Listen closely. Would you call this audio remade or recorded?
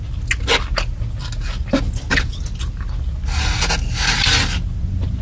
recorded